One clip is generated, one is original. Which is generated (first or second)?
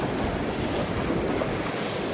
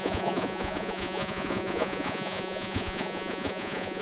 second